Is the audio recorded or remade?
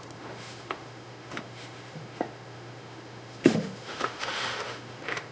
remade